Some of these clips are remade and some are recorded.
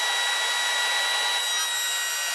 recorded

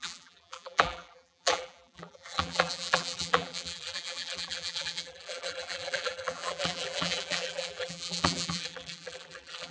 remade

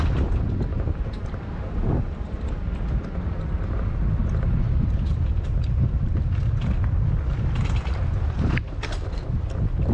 recorded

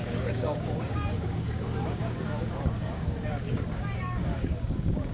remade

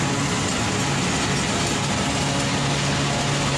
recorded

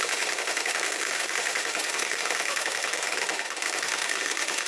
remade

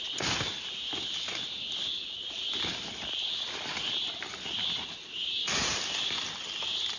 recorded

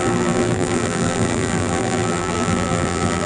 remade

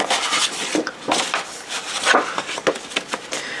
recorded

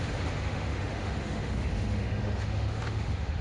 remade